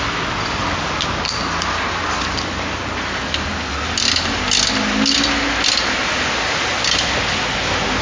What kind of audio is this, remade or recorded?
recorded